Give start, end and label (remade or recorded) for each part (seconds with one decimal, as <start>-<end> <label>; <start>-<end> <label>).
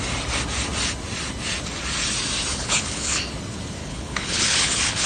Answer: 0.0-2.5 recorded; 2.5-3.2 remade; 3.2-3.8 recorded; 3.8-5.1 remade